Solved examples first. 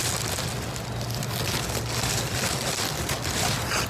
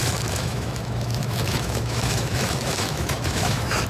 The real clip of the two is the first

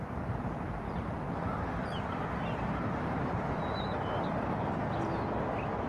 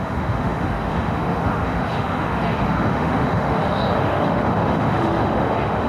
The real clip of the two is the first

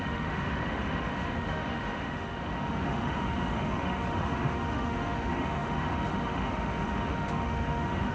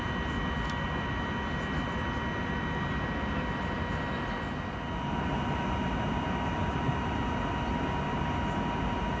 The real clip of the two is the second